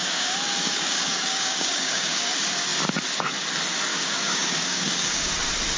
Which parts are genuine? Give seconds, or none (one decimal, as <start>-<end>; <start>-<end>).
2.3-3.9; 5.3-5.8